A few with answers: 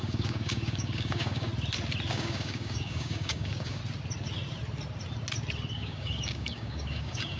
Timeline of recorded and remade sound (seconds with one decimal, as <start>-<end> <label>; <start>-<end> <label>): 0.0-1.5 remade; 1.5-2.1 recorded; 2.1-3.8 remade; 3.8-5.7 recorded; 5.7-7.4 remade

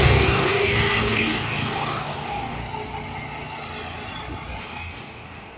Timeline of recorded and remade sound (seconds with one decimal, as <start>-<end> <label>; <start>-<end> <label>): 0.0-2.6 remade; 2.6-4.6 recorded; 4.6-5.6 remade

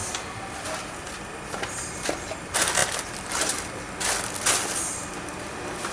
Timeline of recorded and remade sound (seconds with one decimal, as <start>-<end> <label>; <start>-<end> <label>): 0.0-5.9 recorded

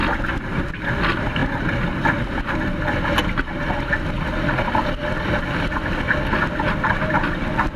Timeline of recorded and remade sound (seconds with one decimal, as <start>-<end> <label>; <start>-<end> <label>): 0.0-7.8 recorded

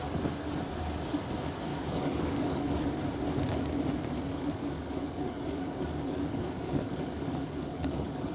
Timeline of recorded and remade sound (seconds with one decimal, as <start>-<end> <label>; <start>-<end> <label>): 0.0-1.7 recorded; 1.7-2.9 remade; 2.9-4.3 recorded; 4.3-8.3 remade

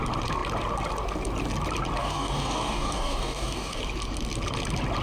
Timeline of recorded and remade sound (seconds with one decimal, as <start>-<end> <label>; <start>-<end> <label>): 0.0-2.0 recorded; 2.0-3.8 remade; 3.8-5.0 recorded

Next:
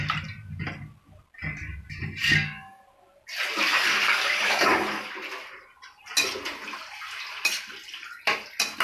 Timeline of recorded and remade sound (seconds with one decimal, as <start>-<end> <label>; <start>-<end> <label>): 0.0-2.2 recorded; 2.2-2.8 remade; 2.8-3.7 recorded; 3.7-5.1 remade; 5.1-8.8 recorded

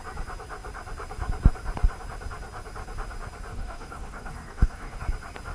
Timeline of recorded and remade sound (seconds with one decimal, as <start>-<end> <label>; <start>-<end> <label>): 0.0-3.5 recorded; 3.5-5.0 remade; 5.0-5.5 recorded